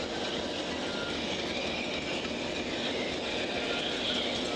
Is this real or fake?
real